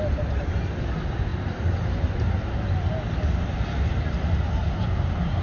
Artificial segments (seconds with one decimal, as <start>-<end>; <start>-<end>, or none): none

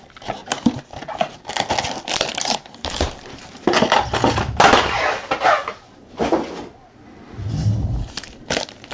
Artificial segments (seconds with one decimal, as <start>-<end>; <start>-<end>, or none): 0.4-1.4; 2.3-3.7

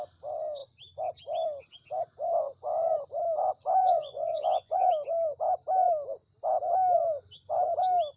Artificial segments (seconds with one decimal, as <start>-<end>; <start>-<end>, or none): 3.8-4.9

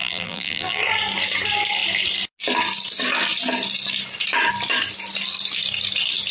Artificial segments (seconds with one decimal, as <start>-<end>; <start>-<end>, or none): 0.0-0.8

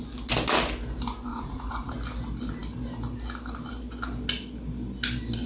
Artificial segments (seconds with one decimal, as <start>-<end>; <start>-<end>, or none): 1.3-1.9

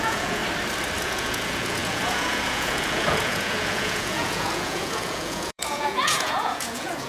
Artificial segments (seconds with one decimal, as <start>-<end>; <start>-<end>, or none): 0.0-0.4; 1.0-7.1

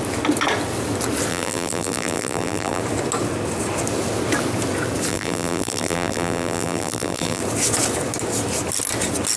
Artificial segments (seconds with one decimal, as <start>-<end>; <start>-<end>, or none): 1.3-2.8; 5.1-7.4